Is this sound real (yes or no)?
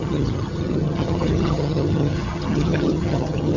no